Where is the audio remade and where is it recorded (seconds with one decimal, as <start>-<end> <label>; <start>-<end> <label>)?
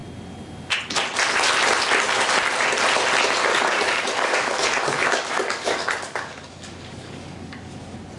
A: 0.0-3.5 recorded; 3.5-7.7 remade; 7.7-8.2 recorded